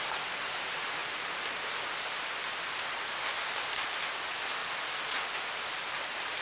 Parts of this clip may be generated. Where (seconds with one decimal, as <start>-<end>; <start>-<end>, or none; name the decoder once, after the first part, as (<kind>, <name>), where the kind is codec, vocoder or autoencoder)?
4.6-5.3 (vocoder, Vocos)